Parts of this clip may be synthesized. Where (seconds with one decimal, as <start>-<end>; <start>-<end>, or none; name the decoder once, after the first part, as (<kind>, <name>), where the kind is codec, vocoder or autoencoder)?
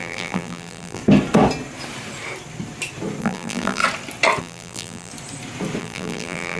0.0-1.0 (vocoder, BigVGAN v2); 3.2-3.8; 4.4-5.1; 5.8-6.6